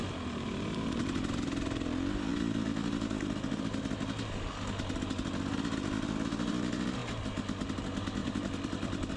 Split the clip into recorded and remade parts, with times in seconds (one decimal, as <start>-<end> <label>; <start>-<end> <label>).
0.0-8.2 recorded; 8.2-9.2 remade